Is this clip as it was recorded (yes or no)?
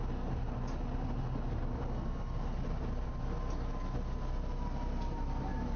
yes